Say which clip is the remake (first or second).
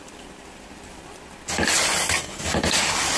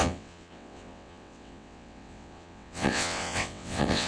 second